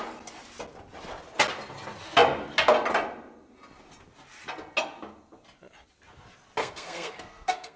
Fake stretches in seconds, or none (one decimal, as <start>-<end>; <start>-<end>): 6.6-7.8